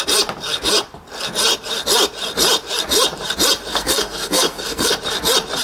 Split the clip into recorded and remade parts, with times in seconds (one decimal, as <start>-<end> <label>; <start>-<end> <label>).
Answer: 0.0-3.7 recorded; 3.7-5.0 remade; 5.0-5.6 recorded